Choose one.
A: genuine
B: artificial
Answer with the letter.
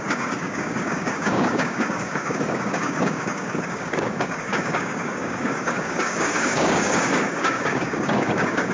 B